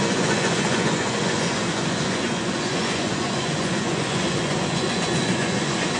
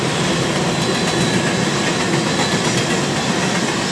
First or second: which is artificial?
first